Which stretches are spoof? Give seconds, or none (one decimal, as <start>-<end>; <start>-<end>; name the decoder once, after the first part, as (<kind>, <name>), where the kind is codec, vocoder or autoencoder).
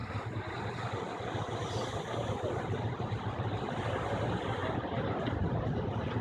0.0-3.7 (vocoder, BigVGAN v2)